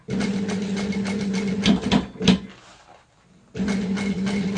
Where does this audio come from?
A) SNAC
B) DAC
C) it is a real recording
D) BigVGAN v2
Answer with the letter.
C